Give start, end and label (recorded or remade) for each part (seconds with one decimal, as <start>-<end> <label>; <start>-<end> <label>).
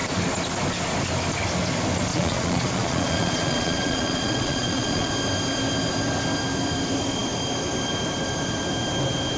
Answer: 0.0-2.1 recorded; 2.1-5.1 remade; 5.1-9.4 recorded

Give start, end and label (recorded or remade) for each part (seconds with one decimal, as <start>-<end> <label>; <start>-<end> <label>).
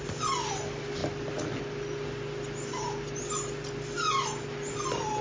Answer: 0.0-5.2 recorded